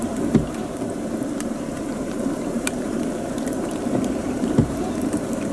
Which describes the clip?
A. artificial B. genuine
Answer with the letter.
A